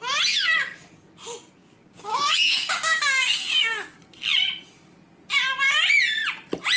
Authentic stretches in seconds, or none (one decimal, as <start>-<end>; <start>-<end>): 0.0-1.6; 4.0-6.8